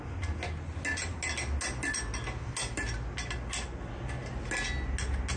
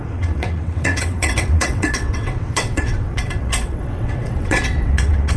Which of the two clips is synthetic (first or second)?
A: second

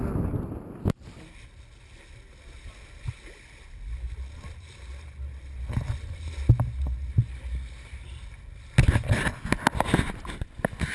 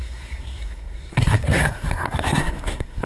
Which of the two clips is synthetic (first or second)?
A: second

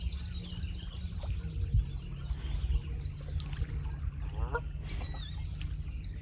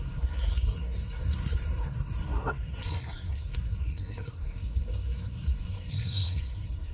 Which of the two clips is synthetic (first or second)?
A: second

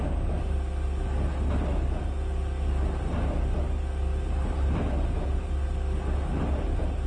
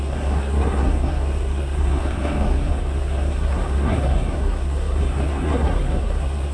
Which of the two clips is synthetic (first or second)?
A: second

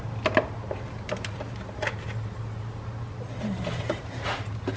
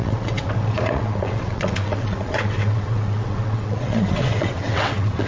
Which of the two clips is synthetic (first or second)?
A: second